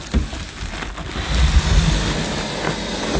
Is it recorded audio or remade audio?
recorded